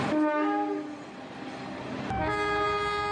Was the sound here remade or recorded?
recorded